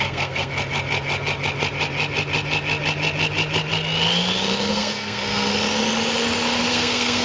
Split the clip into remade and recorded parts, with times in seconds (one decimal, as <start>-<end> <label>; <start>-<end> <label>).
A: 0.0-0.5 remade; 0.5-4.7 recorded; 4.7-5.5 remade; 5.5-6.7 recorded; 6.7-7.2 remade